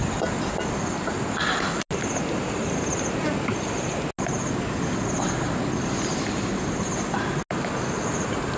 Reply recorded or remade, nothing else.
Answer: recorded